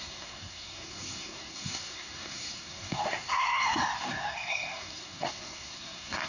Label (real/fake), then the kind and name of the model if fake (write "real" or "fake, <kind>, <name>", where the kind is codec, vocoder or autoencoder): fake, codec, SNAC